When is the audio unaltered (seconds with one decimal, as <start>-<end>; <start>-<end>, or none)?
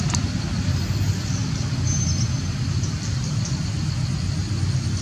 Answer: 0.0-5.0